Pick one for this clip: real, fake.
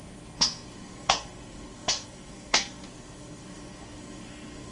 fake